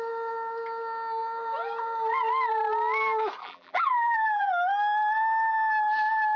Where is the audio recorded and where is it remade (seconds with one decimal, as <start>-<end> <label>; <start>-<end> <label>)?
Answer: 0.0-3.4 recorded; 3.4-4.5 remade; 4.5-6.4 recorded